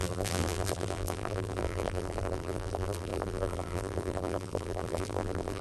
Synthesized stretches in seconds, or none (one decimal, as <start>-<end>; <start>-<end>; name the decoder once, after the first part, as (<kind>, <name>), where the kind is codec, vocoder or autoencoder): 0.0-5.6 (vocoder, BigVGAN v2)